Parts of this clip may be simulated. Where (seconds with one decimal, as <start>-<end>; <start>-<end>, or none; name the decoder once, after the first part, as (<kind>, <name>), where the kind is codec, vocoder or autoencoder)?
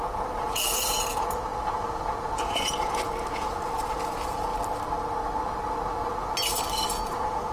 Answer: 0.0-4.5 (vocoder, Vocos); 6.9-7.5